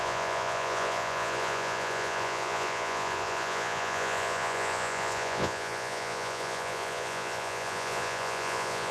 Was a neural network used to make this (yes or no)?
yes